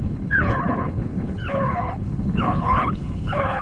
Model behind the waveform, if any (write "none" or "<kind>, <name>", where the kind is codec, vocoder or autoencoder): codec, HILCodec